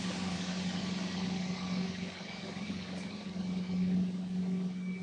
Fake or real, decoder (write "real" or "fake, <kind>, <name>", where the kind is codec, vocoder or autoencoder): fake, codec, DAC